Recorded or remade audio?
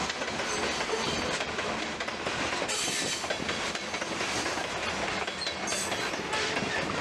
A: recorded